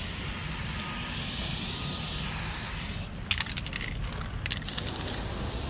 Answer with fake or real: real